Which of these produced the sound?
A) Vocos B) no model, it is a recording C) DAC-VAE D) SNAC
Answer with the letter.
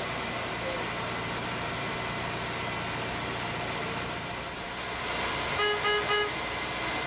B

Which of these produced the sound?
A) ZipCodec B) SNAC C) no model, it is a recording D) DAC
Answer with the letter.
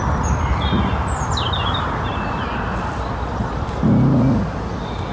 C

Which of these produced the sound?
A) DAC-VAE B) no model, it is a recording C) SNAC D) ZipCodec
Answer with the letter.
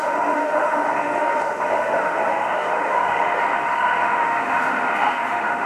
A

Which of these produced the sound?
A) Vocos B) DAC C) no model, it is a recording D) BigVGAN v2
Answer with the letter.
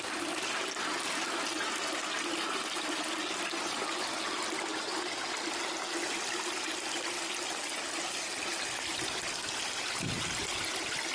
C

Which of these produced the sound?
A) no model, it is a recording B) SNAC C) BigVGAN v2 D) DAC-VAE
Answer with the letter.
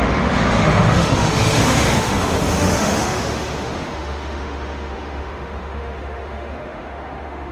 D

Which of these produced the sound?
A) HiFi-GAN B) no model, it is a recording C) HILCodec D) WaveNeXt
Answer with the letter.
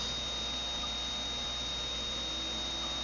B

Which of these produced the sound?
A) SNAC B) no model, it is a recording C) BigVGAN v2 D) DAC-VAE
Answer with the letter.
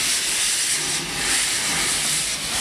B